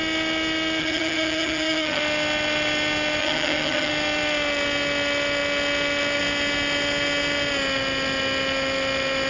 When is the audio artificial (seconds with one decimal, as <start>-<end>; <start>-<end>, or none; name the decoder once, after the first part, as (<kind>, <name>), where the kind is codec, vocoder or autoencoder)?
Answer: 0.8-2.0 (vocoder, HiFi-GAN); 3.2-3.9